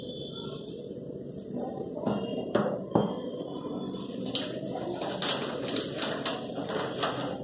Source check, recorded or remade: recorded